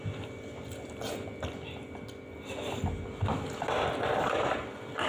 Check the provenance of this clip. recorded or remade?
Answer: recorded